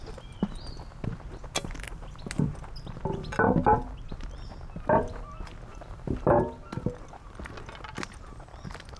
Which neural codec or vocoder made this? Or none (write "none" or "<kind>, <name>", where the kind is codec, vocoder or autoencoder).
none